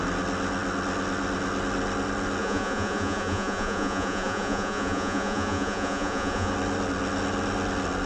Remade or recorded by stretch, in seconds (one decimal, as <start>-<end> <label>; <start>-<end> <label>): 0.0-2.4 recorded; 2.4-6.5 remade; 6.5-8.1 recorded